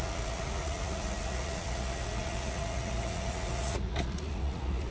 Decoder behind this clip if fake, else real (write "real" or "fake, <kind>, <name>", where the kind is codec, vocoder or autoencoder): fake, vocoder, Vocos